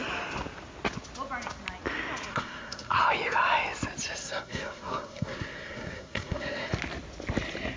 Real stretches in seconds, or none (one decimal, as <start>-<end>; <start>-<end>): 0.0-2.3; 3.0-4.2; 6.7-7.8

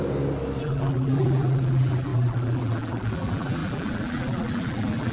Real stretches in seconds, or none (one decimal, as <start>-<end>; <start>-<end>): 0.0-0.6

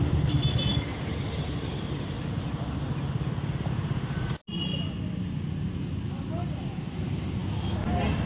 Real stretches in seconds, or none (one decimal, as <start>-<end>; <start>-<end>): 0.0-8.3

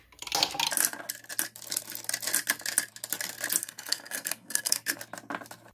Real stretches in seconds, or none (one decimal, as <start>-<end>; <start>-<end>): 0.0-3.6; 5.0-5.7

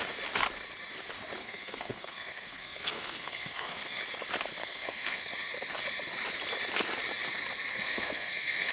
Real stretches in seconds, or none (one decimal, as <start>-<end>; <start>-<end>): 0.0-1.4; 4.0-4.6; 5.3-7.7